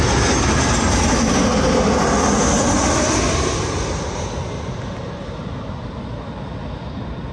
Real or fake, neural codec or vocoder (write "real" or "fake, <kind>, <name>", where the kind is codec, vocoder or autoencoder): real